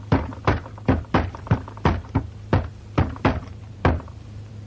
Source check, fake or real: fake